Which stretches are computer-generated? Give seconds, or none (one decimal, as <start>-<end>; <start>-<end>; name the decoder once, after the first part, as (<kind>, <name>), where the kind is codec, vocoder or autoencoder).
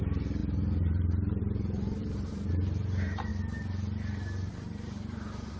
0.0-3.3 (vocoder, BigVGAN v2); 4.5-5.6